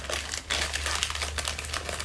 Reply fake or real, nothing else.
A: real